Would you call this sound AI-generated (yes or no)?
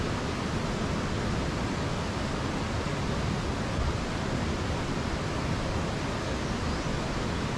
no